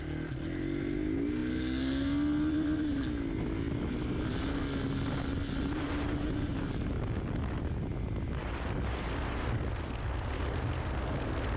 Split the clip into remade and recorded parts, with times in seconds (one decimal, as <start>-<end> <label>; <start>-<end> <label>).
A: 0.0-11.6 recorded